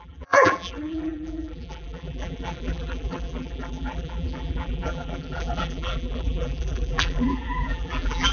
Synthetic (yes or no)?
yes